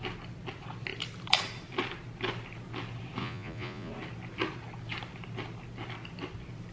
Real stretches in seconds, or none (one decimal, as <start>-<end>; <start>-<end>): 0.0-3.2; 3.9-6.7